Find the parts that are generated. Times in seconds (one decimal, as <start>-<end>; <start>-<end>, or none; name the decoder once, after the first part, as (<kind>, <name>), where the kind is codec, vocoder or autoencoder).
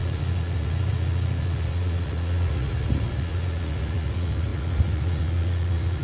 0.0-6.0 (vocoder, Vocos)